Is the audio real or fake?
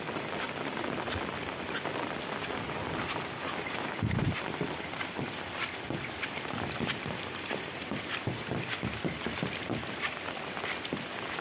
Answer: fake